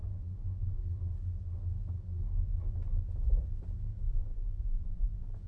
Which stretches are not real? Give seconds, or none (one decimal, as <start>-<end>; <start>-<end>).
0.0-0.8; 4.1-5.5